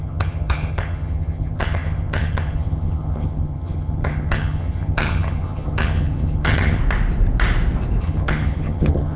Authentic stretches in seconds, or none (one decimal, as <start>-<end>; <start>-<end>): 6.8-8.0